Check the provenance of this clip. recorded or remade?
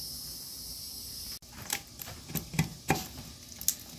recorded